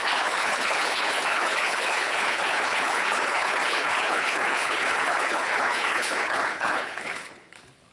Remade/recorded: remade